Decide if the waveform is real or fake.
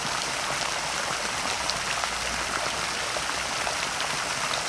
real